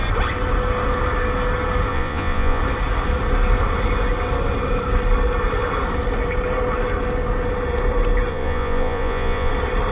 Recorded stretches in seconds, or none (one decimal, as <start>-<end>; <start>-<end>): 0.0-1.9; 2.6-8.3; 9.5-9.9